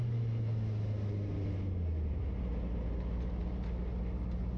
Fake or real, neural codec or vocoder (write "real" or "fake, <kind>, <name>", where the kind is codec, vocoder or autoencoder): real